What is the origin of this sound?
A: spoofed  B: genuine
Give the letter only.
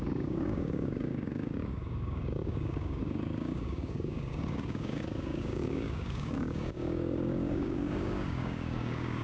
A